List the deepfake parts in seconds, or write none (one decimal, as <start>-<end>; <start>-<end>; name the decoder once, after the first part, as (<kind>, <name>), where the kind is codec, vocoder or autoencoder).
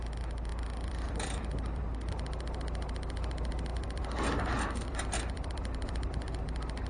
0.5-1.8 (vocoder, BigVGAN v2); 3.7-6.4